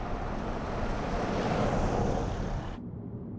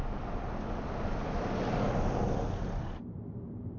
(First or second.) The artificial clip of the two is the first